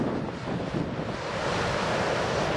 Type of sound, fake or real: real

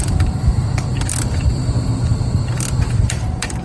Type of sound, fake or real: fake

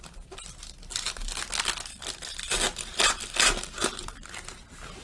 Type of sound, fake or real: real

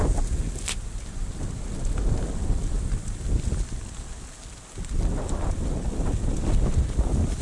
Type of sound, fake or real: real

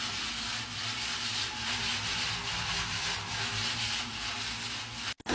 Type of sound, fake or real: real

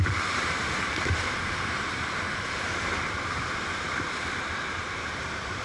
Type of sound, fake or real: fake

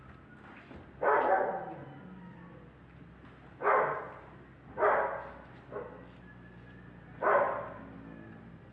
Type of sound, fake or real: fake